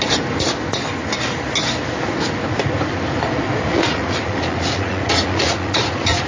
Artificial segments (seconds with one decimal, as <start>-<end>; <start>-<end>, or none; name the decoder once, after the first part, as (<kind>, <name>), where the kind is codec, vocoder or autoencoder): 3.7-6.3 (vocoder, Vocos)